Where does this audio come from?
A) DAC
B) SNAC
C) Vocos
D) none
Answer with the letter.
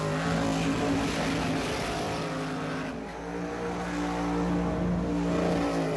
D